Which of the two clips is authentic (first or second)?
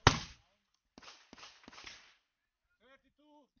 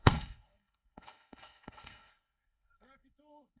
first